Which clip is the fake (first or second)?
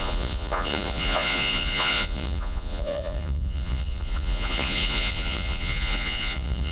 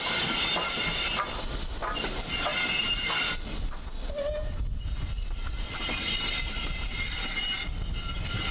first